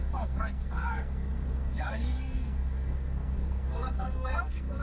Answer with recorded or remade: remade